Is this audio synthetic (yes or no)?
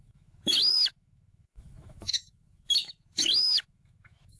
yes